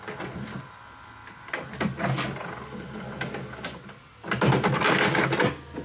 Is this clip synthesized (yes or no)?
no